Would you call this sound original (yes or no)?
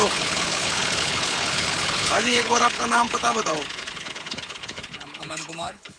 no